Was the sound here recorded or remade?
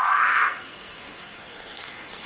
remade